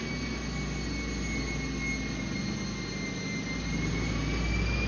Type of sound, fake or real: real